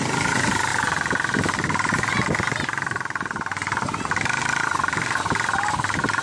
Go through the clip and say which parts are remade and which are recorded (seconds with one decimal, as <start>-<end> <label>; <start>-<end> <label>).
0.0-6.2 recorded